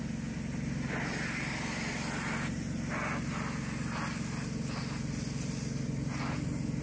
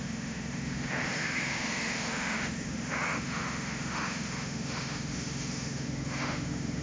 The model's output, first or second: second